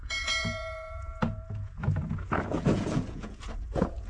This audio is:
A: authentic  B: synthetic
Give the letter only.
B